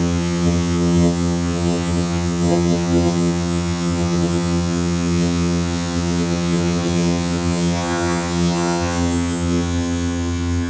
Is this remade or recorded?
remade